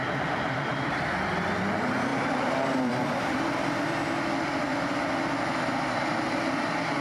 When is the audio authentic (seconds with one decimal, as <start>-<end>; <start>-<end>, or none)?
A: 0.9-2.1; 4.2-7.0